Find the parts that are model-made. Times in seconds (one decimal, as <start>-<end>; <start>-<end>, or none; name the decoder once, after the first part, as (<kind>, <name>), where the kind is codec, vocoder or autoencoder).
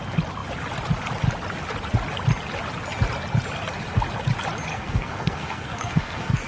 4.7-6.5 (codec, SNAC)